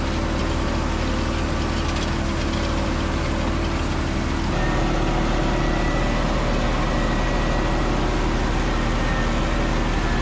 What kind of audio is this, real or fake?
real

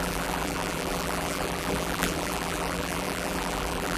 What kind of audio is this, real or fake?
fake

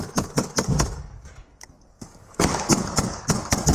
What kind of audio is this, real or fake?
fake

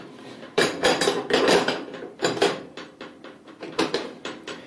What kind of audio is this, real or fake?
fake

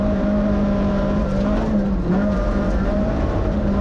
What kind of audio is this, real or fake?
fake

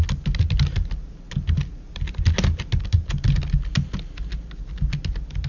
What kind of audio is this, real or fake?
real